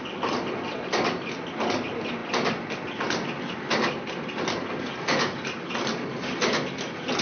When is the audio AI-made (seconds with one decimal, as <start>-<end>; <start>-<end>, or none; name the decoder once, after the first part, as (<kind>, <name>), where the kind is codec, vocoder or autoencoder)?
none